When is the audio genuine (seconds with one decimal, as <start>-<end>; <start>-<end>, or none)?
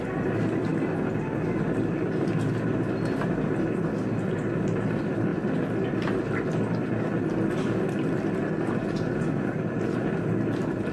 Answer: 0.0-10.9